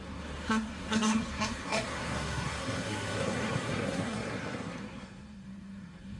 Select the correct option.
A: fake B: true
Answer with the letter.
A